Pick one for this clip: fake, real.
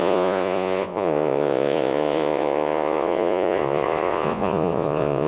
fake